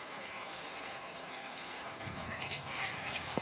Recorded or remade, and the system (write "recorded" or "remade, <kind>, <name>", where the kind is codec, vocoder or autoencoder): remade, codec, SNAC